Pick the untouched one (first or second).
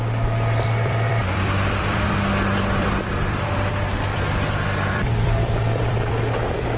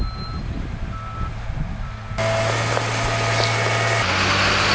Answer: second